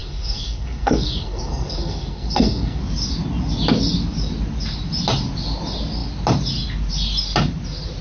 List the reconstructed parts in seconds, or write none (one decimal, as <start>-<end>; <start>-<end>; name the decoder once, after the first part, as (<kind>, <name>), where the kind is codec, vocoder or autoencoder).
0.0-2.8 (codec, SNAC)

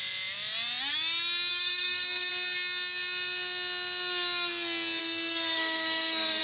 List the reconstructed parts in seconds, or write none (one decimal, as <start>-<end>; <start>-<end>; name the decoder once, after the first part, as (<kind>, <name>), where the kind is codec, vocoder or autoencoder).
1.5-2.3 (codec, SNAC); 5.0-6.4

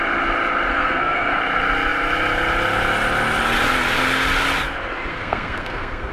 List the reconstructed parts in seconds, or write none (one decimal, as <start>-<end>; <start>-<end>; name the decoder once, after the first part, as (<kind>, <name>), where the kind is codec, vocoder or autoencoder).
0.7-1.4 (codec, SNAC); 5.1-6.1